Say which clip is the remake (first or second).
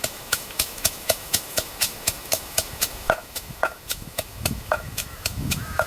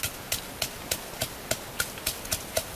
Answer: first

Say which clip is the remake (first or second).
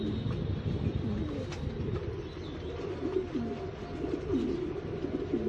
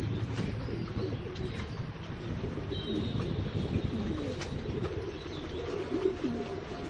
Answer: second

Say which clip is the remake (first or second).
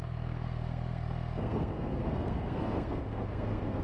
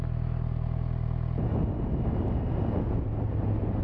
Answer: first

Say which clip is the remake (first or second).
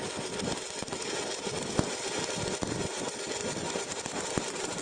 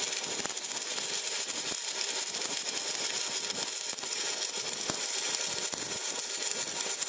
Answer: first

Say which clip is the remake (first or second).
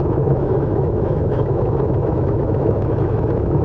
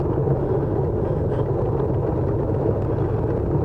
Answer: first